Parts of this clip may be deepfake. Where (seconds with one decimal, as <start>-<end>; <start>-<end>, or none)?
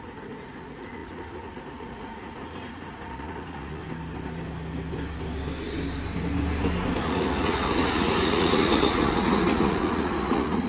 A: 0.0-3.8; 7.0-10.7